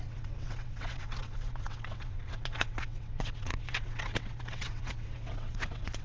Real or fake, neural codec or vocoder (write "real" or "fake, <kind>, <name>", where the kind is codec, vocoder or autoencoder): fake, vocoder, WaveNeXt